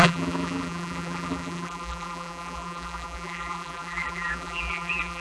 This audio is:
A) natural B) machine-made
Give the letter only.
B